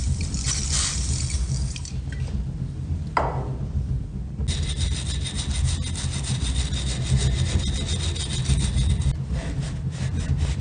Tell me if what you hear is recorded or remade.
recorded